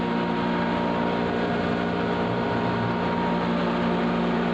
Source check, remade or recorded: recorded